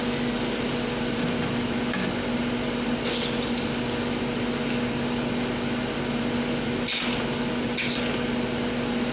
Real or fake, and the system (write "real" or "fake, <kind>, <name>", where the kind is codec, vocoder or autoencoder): real